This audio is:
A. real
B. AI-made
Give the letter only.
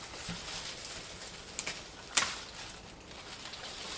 A